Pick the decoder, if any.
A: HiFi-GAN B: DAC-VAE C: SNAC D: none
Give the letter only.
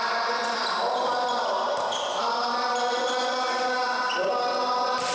D